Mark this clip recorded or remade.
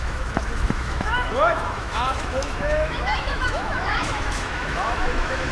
remade